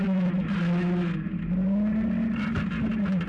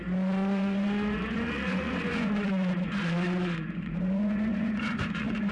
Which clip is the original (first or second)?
first